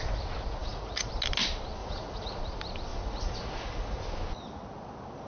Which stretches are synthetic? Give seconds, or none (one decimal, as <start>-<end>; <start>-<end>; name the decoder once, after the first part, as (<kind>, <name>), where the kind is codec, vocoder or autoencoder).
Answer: 0.6-1.1 (vocoder, Vocos); 1.8-2.4; 2.9-4.0

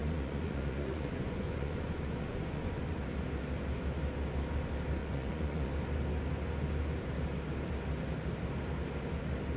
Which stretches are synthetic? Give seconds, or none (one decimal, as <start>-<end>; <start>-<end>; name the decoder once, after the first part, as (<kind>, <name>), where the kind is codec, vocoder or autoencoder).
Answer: 0.0-3.0 (vocoder, Vocos); 5.0-5.7

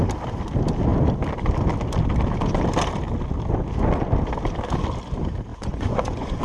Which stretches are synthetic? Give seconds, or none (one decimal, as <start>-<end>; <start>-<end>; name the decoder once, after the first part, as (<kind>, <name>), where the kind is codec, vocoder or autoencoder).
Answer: 5.5-6.4 (vocoder, Vocos)

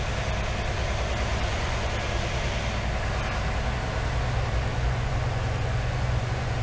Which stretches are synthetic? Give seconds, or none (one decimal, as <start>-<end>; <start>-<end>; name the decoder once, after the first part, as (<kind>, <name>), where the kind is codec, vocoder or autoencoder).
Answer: 1.3-1.9 (vocoder, Vocos); 4.7-6.6

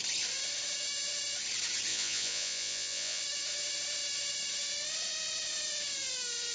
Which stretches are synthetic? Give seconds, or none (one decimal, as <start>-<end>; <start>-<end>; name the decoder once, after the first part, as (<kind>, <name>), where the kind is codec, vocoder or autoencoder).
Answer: 1.9-3.2 (vocoder, Vocos)

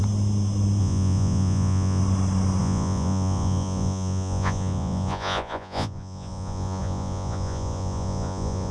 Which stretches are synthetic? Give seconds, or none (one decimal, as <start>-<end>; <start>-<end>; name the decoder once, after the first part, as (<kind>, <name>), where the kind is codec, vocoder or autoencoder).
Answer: 0.8-2.0 (vocoder, Vocos); 2.6-8.7

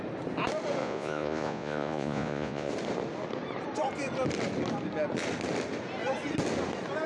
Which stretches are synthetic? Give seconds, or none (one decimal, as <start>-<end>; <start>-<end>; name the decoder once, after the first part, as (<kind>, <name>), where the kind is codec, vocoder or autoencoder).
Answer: 0.8-2.7 (vocoder, Vocos)